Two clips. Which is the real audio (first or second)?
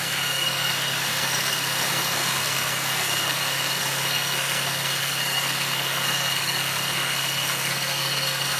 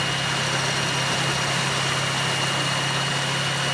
second